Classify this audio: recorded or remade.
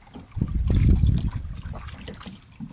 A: recorded